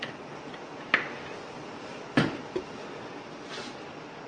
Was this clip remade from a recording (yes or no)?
no